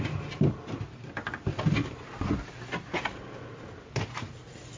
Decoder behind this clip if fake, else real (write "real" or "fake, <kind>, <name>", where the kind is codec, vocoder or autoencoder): real